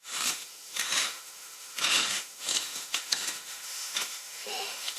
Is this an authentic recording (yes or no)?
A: no